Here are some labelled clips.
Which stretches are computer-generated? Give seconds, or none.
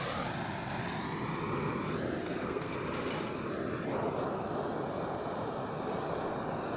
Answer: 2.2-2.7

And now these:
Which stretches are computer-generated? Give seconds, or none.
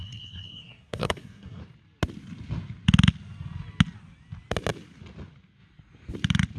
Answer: 0.0-1.6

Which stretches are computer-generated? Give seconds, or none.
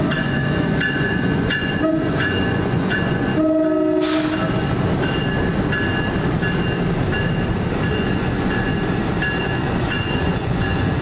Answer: 0.0-3.3; 7.9-8.7; 9.4-11.0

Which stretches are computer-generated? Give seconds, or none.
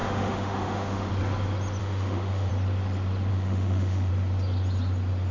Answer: 0.0-1.1; 1.8-2.5; 3.3-4.1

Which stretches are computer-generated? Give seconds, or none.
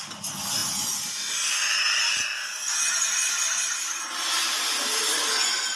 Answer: none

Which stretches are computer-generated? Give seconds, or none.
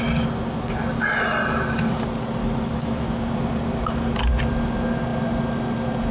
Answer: 2.4-3.1